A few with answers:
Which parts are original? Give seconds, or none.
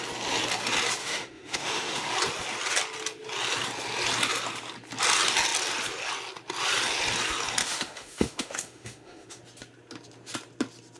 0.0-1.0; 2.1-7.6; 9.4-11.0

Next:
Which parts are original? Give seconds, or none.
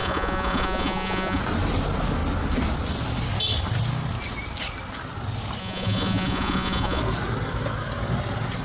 1.4-5.6; 7.0-8.6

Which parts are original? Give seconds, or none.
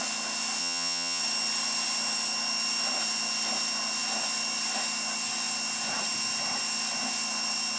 0.0-0.6; 1.2-7.8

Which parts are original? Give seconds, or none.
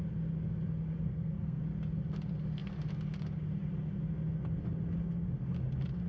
0.0-1.0; 1.6-6.1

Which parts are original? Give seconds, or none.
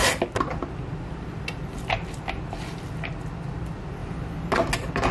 0.0-5.1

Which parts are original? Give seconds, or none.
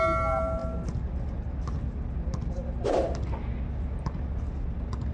0.0-5.1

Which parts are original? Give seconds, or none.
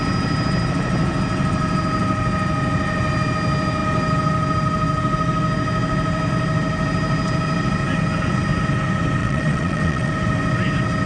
0.0-9.2; 10.1-11.1